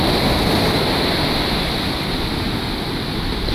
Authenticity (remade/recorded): recorded